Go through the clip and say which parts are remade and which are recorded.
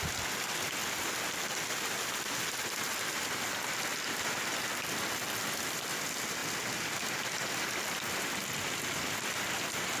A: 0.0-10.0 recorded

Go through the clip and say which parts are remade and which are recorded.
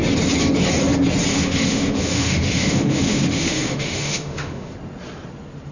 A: 0.0-1.3 recorded; 1.3-4.7 remade; 4.7-5.7 recorded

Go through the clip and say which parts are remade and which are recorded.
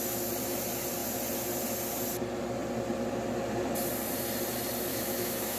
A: 0.0-4.9 recorded; 4.9-5.6 remade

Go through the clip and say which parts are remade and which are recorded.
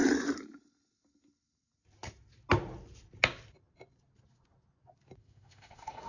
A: 0.0-5.2 recorded; 5.2-6.1 remade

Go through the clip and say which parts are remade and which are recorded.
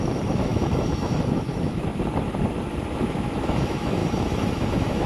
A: 0.0-1.9 remade; 1.9-3.0 recorded; 3.0-5.1 remade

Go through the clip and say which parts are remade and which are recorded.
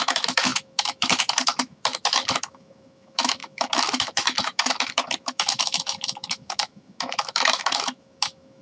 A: 0.0-8.6 remade